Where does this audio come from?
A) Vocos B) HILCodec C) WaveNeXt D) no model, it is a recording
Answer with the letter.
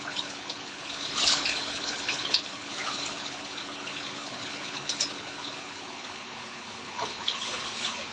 B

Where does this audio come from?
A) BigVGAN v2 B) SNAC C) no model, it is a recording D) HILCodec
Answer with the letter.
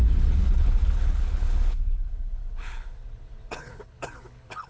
D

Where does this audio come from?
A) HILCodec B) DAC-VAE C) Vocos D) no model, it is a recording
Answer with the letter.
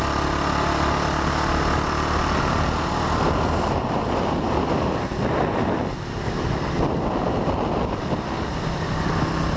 D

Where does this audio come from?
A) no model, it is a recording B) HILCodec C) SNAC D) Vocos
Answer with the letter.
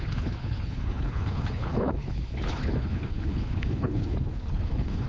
B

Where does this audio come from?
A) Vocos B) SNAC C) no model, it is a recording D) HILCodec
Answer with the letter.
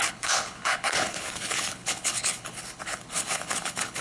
D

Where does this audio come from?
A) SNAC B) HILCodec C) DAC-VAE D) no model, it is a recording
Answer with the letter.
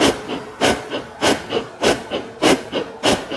D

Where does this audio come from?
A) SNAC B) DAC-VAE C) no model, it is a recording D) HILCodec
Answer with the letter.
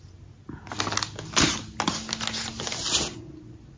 C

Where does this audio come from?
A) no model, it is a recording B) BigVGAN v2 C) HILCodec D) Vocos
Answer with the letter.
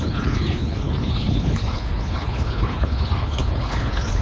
C